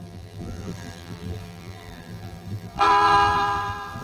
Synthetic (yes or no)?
yes